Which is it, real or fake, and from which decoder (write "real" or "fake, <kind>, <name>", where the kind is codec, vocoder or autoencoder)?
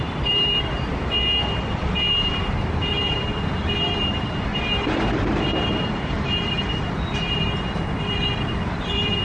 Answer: fake, vocoder, BigVGAN v2